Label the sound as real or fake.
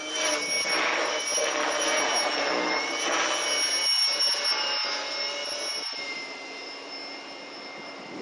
real